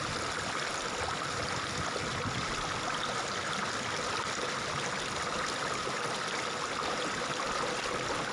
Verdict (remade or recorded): recorded